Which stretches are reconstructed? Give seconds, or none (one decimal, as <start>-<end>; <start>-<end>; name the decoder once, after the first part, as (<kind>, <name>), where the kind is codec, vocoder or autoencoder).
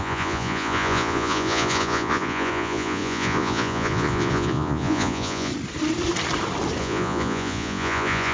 0.0-5.5 (vocoder, Vocos); 6.8-8.3